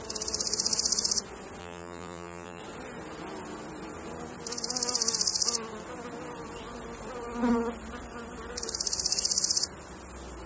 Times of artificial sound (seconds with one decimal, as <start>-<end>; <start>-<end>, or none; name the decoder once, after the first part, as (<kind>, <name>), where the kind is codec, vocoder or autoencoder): 1.6-2.6 (vocoder, BigVGAN v2)